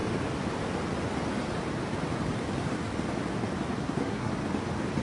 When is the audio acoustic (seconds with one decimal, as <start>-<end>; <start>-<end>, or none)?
0.0-3.8; 4.3-5.0